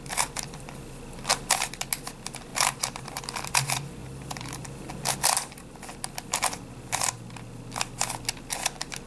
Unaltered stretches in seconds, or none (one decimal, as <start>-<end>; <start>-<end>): 0.0-2.5; 3.2-4.0; 4.9-9.1

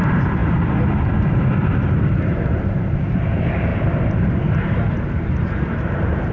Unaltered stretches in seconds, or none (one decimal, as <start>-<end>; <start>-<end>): none

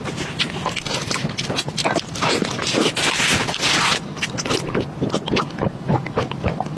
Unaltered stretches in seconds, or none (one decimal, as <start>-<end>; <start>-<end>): 0.0-6.8

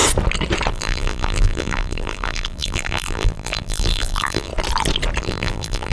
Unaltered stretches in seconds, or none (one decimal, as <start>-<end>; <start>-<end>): 0.0-0.7; 4.5-5.2